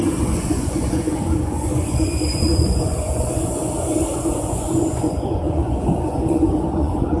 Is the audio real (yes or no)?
no